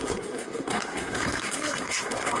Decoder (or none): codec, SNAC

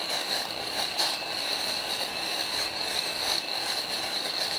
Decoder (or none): codec, DAC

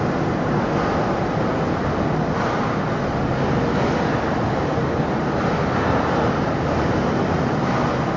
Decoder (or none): none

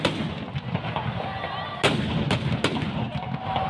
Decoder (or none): none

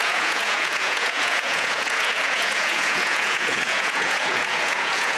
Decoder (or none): vocoder, Vocos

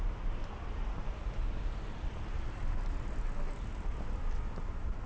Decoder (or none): none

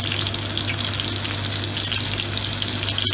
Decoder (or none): none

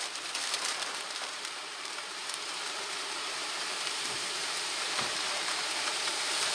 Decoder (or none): vocoder, BigVGAN v2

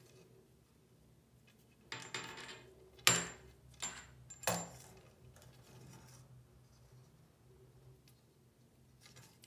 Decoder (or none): none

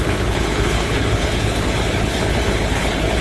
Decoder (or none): codec, HILCodec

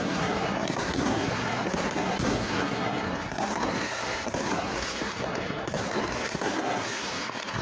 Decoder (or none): codec, SNAC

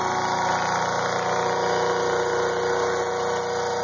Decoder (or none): none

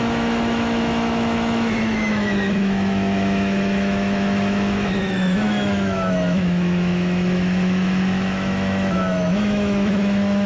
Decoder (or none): autoencoder, DAC-VAE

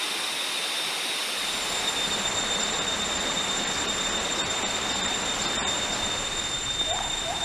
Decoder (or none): none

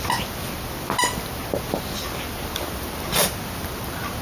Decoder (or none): none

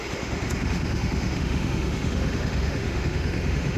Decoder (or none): autoencoder, DAC-VAE